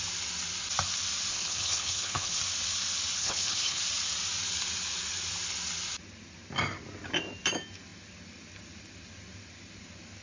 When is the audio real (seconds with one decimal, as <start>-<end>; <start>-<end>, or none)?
0.0-1.3; 2.4-3.2; 3.8-10.2